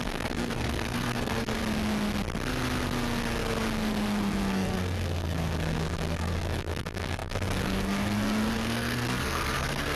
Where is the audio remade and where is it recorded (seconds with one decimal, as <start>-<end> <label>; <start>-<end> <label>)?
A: 0.0-1.6 remade; 1.6-4.2 recorded; 4.2-10.0 remade